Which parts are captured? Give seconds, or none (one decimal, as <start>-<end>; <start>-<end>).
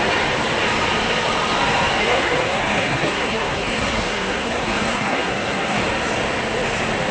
0.0-2.0; 5.8-7.1